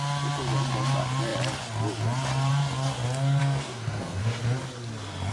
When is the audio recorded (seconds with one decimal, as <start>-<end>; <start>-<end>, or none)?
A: 0.0-3.4; 4.4-5.3